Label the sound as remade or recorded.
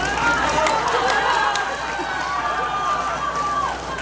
recorded